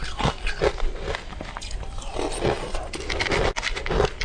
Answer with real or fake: real